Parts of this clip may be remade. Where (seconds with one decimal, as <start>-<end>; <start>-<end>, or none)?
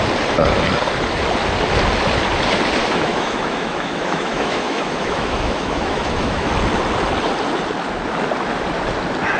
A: 2.8-6.5